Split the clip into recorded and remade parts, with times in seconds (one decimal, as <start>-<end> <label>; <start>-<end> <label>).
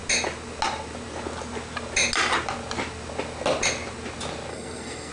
0.0-4.5 recorded; 4.5-5.1 remade